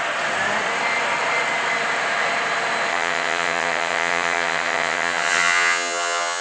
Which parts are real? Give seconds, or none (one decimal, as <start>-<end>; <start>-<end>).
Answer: 0.0-2.9